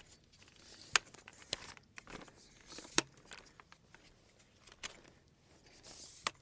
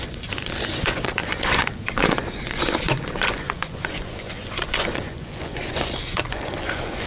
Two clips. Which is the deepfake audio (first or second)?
second